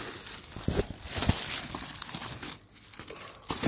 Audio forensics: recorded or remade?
recorded